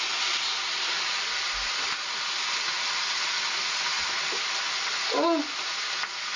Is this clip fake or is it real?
real